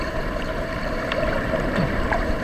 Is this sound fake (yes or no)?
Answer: yes